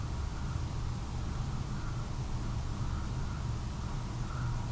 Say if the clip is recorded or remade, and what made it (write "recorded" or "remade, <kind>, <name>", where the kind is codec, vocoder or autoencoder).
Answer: recorded